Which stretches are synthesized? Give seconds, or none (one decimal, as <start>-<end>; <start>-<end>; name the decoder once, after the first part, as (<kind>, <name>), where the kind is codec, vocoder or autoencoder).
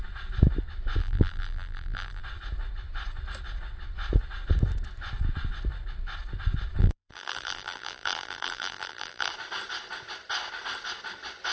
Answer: 1.0-2.2 (vocoder, BigVGAN v2); 6.8-9.3